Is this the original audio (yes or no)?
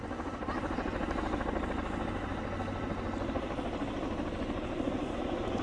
yes